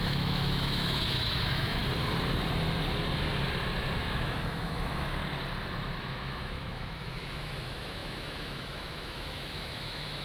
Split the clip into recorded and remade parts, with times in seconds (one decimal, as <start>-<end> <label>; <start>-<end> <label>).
0.0-1.8 remade; 1.8-4.0 recorded; 4.0-5.2 remade; 5.2-6.0 recorded; 6.0-10.2 remade